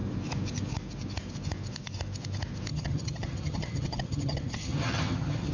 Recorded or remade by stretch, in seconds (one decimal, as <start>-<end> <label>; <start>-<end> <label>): 0.0-2.7 recorded; 2.7-5.5 remade

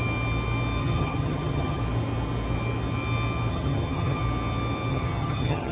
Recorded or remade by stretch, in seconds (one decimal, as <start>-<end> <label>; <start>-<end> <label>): 0.0-0.8 recorded; 0.8-1.8 remade; 1.8-3.5 recorded; 3.5-4.2 remade; 4.2-4.9 recorded; 4.9-5.7 remade